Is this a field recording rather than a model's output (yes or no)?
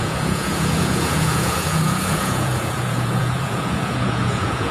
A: no